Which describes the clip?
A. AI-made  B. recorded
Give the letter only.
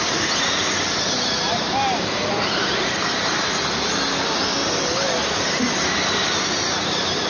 B